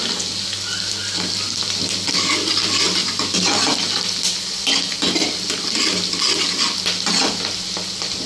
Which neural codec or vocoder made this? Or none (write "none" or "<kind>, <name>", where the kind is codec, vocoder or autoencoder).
none